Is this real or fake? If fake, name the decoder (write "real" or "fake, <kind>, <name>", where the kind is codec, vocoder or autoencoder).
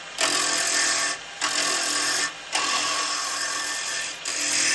real